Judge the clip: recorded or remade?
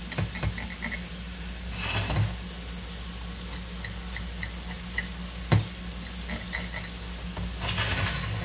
recorded